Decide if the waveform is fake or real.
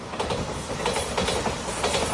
real